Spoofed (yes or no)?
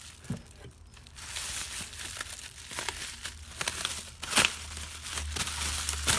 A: no